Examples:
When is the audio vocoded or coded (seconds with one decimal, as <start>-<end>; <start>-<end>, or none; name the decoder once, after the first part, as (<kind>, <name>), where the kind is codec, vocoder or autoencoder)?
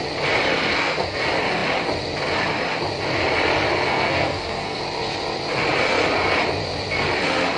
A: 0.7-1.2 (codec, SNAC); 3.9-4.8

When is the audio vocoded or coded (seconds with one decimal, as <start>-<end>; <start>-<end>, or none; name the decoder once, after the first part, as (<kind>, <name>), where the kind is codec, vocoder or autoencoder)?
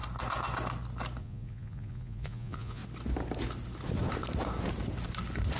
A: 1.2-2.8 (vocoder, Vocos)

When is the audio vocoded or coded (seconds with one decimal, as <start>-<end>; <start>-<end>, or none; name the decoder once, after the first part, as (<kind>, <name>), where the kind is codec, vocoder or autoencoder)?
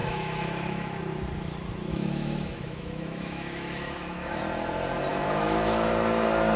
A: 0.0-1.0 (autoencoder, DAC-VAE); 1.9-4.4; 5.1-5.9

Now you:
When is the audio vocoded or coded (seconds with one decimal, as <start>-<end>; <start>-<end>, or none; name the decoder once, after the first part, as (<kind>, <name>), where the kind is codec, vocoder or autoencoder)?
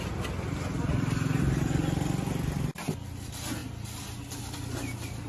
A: none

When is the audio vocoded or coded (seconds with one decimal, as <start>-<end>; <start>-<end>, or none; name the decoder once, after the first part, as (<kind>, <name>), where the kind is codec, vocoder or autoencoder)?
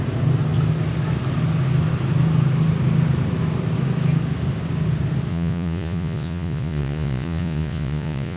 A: 5.3-8.4 (vocoder, Vocos)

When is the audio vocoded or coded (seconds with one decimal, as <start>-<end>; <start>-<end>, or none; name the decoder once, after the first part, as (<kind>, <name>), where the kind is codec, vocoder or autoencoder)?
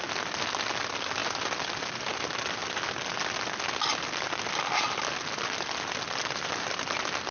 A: none